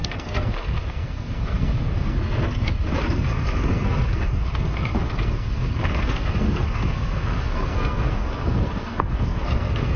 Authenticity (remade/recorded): remade